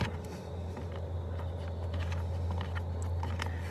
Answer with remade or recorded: recorded